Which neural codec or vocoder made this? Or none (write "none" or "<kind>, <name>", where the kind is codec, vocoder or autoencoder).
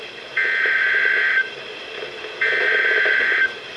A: vocoder, BigVGAN v2